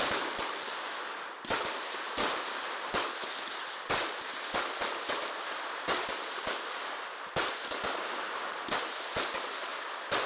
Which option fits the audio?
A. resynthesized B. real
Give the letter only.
B